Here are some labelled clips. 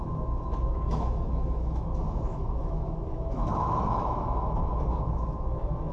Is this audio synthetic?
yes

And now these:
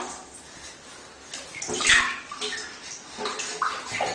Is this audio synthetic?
no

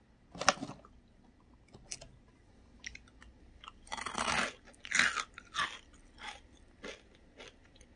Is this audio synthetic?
no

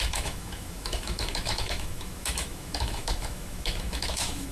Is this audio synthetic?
yes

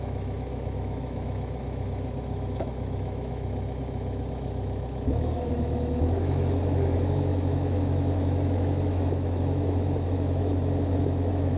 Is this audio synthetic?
yes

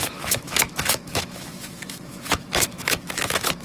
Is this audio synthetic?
yes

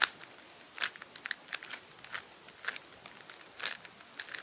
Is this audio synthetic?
no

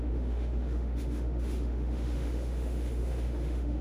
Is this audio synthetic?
yes